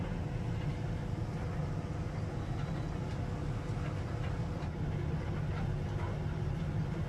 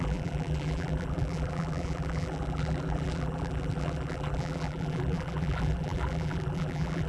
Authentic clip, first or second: first